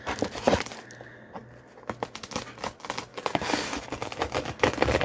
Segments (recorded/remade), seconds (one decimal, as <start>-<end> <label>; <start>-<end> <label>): 0.0-3.1 recorded; 3.1-5.0 remade